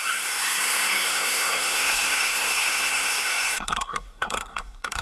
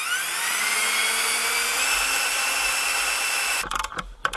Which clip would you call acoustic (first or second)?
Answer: second